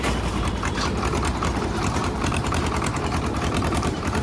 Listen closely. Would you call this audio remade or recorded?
remade